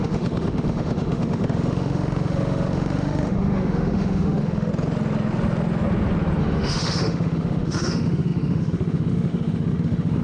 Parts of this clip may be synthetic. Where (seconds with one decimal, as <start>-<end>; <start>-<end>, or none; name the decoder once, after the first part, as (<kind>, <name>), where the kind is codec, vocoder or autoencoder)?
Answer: 0.0-4.7 (autoencoder, DAC-VAE); 6.4-10.2